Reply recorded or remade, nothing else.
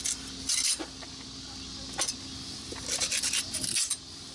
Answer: recorded